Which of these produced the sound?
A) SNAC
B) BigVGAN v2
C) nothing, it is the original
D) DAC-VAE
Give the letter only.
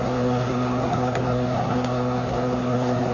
A